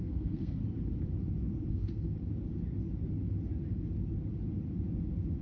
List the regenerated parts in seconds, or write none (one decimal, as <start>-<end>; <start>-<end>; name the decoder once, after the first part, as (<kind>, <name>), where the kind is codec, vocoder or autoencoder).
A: 0.0-0.6 (codec, SNAC); 1.7-2.1